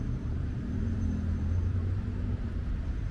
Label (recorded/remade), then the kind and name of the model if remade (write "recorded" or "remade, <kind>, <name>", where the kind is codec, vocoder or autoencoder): remade, vocoder, BigVGAN v2